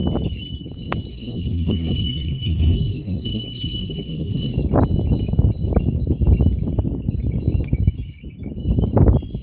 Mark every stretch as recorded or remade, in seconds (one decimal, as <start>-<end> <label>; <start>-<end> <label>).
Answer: 0.0-1.1 recorded; 1.1-4.5 remade; 4.5-9.4 recorded